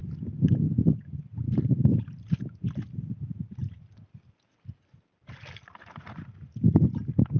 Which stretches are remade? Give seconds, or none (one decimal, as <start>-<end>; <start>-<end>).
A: none